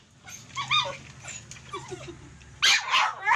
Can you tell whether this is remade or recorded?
recorded